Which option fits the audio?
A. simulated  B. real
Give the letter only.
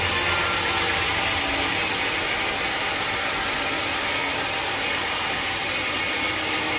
B